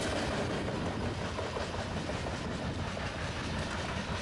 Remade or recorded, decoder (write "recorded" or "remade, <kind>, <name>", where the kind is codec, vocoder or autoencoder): recorded